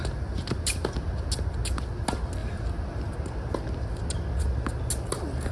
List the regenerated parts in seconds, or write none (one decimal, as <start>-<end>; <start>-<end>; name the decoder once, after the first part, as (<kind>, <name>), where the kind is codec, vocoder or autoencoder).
2.4-3.0 (vocoder, BigVGAN v2)